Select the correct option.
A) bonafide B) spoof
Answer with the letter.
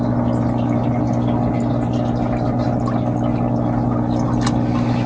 A